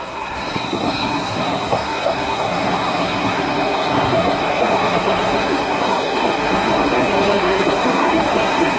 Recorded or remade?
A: remade